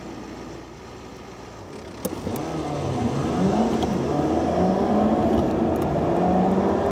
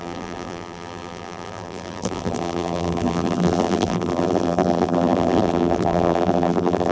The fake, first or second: second